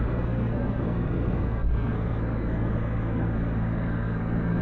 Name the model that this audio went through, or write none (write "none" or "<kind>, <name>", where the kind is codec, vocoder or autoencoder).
codec, SNAC